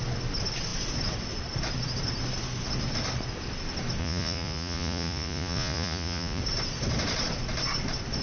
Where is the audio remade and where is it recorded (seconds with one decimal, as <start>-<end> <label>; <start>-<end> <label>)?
0.0-4.0 recorded; 4.0-6.4 remade; 6.4-8.2 recorded